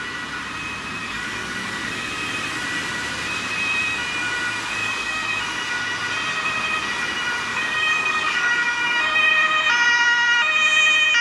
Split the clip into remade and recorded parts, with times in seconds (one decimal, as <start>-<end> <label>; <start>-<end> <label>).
0.0-1.0 recorded; 1.0-2.1 remade; 2.1-4.8 recorded; 4.8-5.4 remade; 5.4-7.5 recorded; 7.5-9.3 remade; 9.3-11.2 recorded